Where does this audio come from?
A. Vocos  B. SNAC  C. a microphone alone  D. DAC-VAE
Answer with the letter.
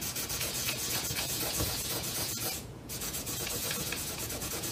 A